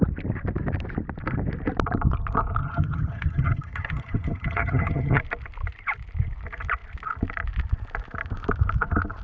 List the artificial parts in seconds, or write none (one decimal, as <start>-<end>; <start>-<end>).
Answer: 2.6-5.2